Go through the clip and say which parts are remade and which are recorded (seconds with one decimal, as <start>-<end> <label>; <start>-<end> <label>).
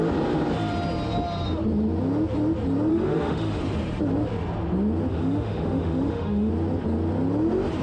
0.0-2.9 recorded; 2.9-3.6 remade; 3.6-5.1 recorded; 5.1-6.5 remade; 6.5-7.8 recorded